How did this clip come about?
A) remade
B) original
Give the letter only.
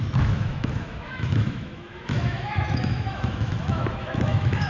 A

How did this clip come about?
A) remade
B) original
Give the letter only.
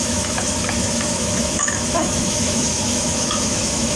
A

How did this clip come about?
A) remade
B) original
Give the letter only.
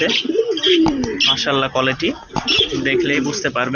B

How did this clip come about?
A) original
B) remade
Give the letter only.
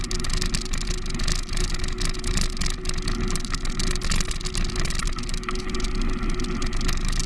A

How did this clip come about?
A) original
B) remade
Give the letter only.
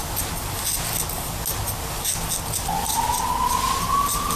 A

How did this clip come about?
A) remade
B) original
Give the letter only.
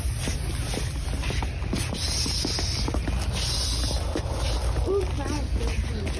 B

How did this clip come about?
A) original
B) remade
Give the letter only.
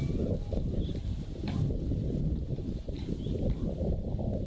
A